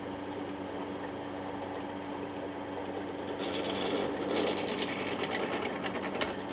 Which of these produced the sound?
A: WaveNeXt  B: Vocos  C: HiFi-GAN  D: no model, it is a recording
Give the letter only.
D